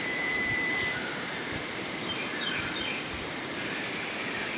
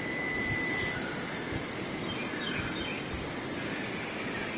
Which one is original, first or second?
second